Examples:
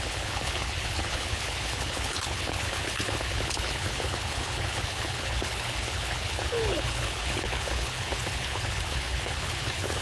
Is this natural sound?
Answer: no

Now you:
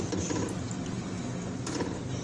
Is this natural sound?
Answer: yes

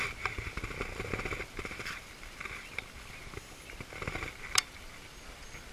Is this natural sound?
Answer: yes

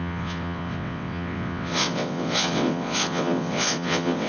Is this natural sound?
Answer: no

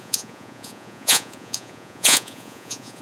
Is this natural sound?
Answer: no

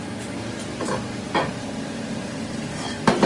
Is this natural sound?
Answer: yes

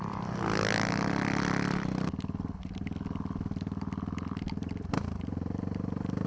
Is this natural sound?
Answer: yes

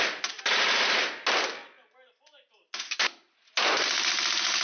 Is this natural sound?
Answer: yes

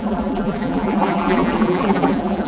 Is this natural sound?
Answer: no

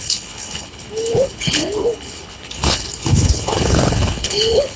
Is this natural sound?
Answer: no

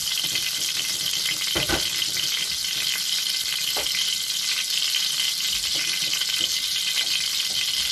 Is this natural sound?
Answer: yes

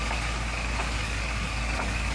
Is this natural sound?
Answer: no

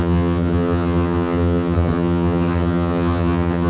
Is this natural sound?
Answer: no